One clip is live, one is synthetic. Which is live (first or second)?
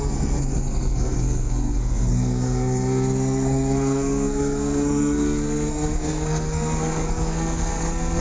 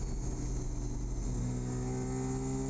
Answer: second